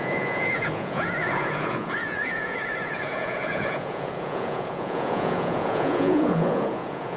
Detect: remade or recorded remade